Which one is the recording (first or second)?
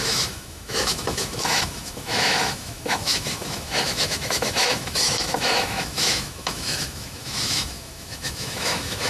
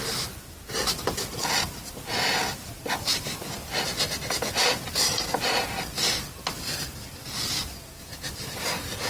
second